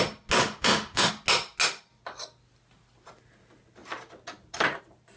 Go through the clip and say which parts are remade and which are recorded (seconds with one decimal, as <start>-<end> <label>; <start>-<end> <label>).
0.0-0.4 recorded; 0.4-1.1 remade; 1.1-5.2 recorded